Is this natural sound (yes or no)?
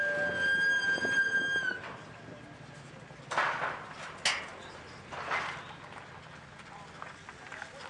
yes